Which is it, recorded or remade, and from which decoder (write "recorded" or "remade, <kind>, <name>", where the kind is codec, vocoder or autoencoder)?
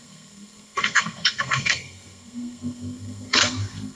remade, codec, SNAC